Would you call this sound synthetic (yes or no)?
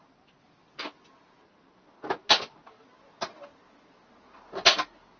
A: no